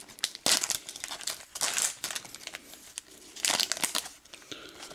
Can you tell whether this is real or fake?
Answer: real